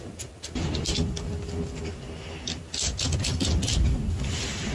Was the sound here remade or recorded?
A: recorded